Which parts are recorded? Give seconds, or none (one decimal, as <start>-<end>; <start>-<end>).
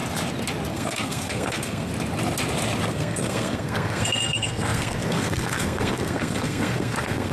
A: 0.0-0.7; 1.9-2.9